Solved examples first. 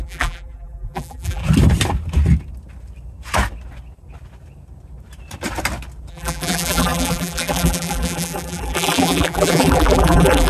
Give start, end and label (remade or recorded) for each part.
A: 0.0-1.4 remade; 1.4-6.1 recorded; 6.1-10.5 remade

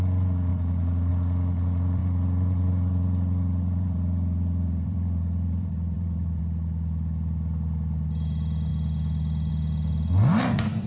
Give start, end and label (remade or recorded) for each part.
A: 0.0-0.5 recorded; 0.5-1.1 remade; 1.1-2.0 recorded; 2.0-6.4 remade; 6.4-10.9 recorded